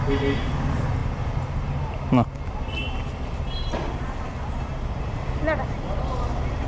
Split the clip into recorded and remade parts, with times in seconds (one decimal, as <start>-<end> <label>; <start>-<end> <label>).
0.0-6.7 recorded